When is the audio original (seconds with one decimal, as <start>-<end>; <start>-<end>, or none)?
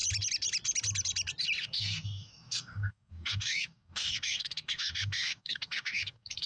0.0-1.6